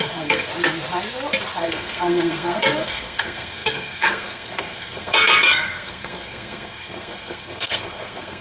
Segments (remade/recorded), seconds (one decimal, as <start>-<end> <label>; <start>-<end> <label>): 0.0-0.5 remade; 0.5-1.6 recorded; 1.6-8.4 remade

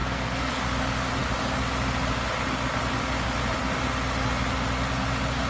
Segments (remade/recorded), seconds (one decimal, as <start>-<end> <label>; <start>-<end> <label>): 0.0-0.5 remade; 0.5-5.5 recorded

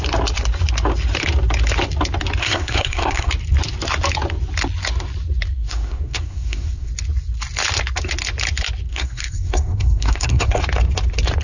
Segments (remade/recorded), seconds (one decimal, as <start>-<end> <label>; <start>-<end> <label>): 0.0-2.4 recorded; 2.4-3.3 remade; 3.3-5.5 recorded; 5.5-6.9 remade; 6.9-8.9 recorded; 8.9-10.6 remade; 10.6-11.4 recorded

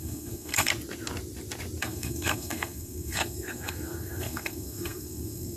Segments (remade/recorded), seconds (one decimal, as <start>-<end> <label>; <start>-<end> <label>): 0.0-0.7 remade; 0.7-1.8 recorded; 1.8-5.6 remade